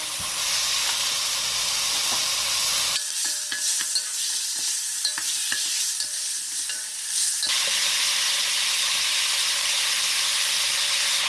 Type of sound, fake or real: real